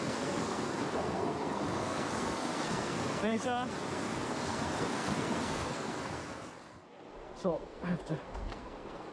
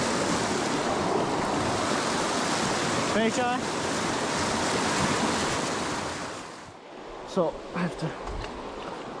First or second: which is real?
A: second